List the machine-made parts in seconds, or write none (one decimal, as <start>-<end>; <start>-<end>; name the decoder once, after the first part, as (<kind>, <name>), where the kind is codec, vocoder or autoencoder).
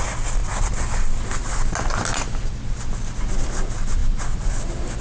none